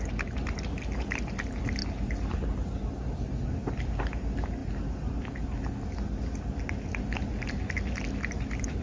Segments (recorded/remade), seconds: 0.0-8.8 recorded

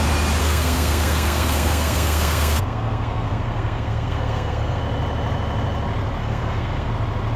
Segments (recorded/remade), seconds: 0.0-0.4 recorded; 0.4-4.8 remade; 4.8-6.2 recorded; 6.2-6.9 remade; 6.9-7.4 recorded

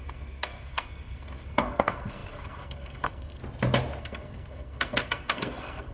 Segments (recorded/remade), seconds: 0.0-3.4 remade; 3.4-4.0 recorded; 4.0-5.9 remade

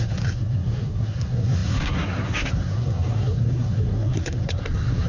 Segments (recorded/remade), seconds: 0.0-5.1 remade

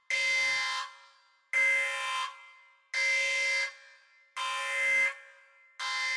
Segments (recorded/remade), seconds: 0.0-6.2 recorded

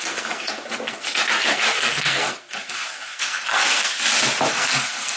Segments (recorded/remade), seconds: 0.0-3.9 remade; 3.9-4.5 recorded; 4.5-5.2 remade

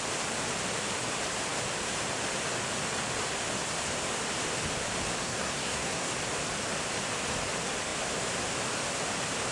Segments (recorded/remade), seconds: 0.0-5.2 recorded; 5.2-6.1 remade; 6.1-9.5 recorded

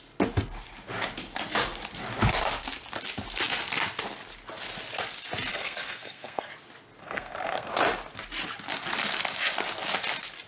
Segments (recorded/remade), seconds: 0.0-5.5 recorded; 5.5-6.5 remade; 6.5-7.0 recorded; 7.0-7.7 remade; 7.7-10.5 recorded